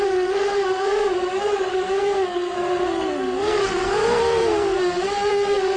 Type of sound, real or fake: fake